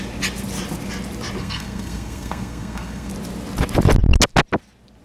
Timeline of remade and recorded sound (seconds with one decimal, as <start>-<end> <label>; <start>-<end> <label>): 0.0-1.4 recorded; 1.4-3.1 remade; 3.1-5.0 recorded